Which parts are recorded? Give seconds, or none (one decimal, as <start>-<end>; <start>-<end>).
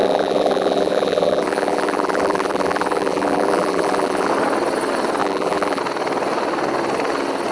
4.3-5.2; 5.8-7.5